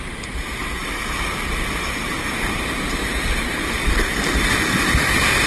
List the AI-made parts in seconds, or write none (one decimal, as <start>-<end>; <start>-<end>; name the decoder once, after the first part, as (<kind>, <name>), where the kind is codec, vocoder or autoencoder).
0.0-5.5 (vocoder, BigVGAN v2)